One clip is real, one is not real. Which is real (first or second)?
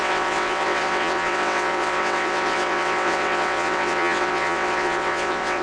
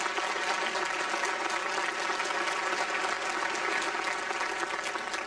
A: second